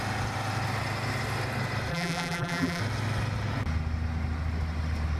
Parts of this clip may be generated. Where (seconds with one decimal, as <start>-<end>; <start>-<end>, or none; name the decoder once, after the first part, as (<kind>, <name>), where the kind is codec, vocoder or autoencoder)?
1.9-2.8 (vocoder, BigVGAN v2)